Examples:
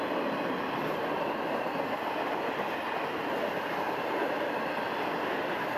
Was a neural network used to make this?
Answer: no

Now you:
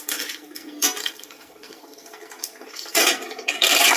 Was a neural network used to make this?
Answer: yes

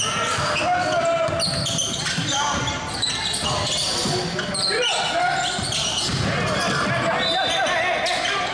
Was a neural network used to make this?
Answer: no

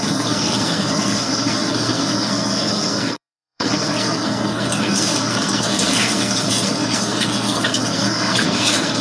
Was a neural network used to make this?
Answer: yes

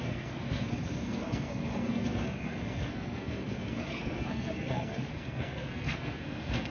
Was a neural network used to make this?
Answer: yes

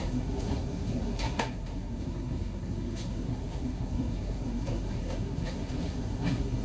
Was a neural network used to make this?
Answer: yes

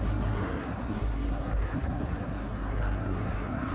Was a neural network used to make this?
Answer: yes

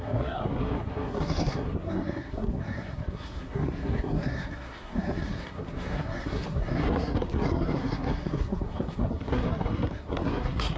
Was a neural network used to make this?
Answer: yes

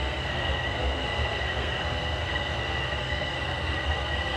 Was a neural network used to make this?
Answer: yes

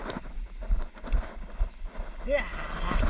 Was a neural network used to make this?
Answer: no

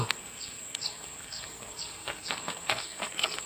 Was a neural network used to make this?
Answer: yes